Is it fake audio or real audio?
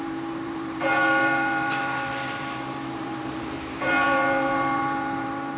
fake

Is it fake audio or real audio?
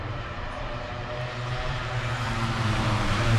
fake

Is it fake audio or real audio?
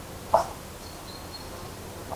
real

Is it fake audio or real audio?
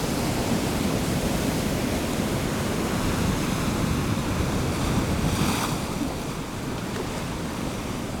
fake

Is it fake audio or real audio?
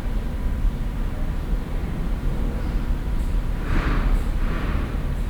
fake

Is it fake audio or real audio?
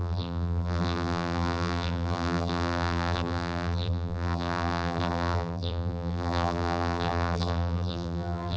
fake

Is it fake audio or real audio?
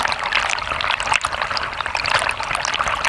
real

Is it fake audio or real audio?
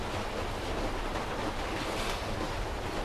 real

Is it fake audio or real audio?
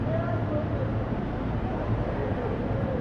fake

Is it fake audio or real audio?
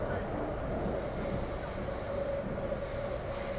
real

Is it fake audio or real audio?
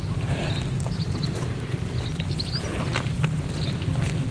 real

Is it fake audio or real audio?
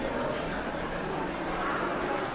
fake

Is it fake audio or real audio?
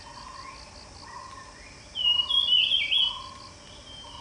real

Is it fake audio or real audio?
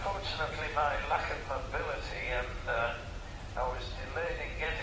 fake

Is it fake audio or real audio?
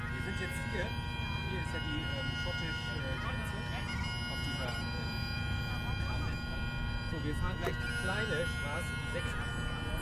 real